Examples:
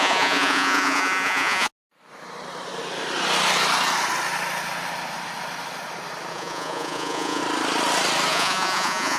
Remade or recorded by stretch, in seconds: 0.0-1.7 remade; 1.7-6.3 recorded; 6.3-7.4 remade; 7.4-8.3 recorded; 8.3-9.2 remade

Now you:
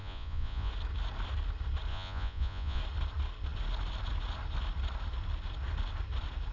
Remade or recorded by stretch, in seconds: 0.0-0.7 remade; 0.7-1.9 recorded; 1.9-2.8 remade; 2.8-6.5 recorded